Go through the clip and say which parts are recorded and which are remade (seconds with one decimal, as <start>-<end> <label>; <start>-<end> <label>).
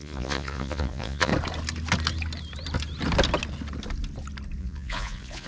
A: 0.0-1.3 remade; 1.3-4.6 recorded; 4.6-5.5 remade